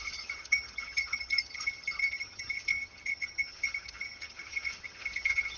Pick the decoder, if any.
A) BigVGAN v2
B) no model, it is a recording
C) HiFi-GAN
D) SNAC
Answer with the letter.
C